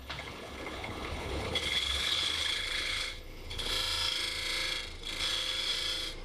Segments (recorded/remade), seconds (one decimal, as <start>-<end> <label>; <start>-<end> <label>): 0.0-3.7 remade; 3.7-6.2 recorded